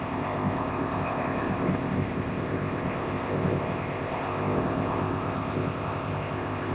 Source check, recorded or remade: remade